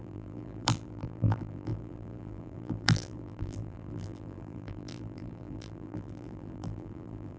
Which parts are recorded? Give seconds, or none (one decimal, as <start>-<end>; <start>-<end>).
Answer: none